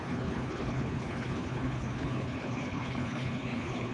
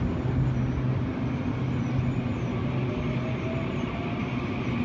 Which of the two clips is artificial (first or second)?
first